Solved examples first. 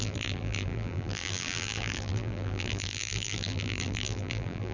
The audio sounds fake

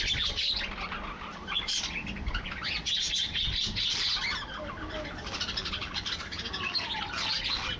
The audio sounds real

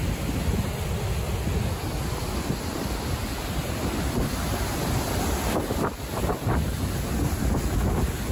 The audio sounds real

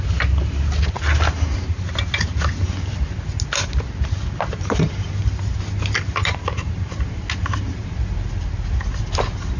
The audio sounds real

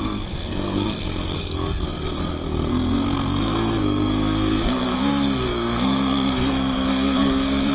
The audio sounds fake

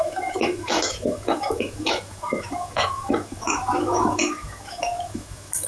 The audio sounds fake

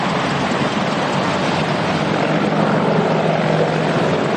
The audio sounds real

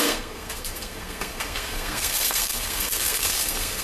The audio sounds fake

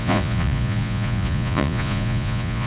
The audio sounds fake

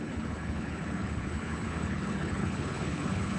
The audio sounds fake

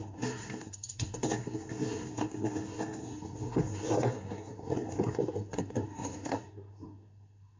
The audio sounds fake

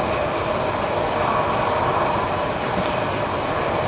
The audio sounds real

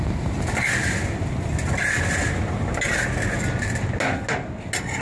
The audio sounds real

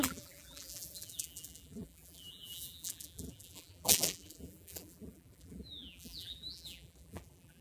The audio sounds fake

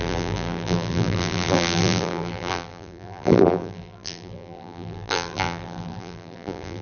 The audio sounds fake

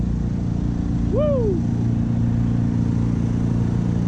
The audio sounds real